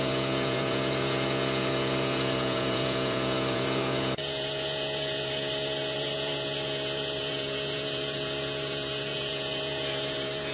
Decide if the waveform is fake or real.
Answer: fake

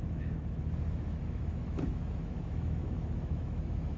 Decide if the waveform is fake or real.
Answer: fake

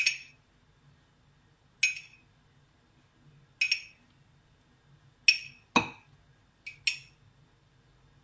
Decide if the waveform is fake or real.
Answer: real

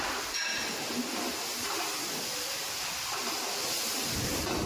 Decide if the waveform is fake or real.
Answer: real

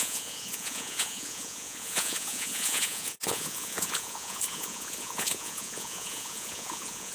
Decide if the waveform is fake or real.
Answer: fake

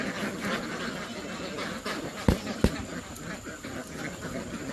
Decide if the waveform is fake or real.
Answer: real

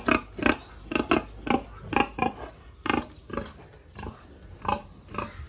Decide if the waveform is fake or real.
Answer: real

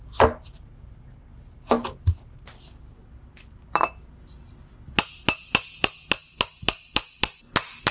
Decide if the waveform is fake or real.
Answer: real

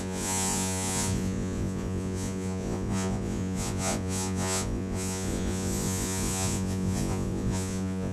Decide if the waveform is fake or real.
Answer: fake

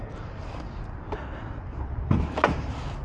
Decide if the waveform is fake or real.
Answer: real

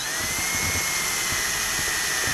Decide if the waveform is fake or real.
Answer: real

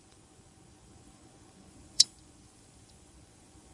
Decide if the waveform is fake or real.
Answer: fake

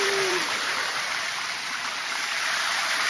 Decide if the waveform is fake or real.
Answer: fake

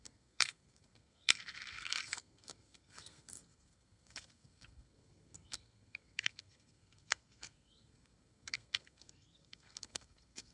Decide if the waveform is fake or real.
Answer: fake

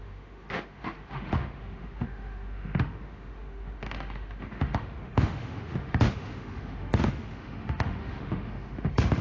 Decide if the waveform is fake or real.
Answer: fake